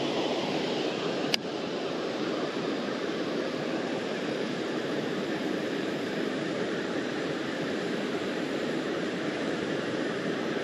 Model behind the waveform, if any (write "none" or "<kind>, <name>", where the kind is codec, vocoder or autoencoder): vocoder, BigVGAN v2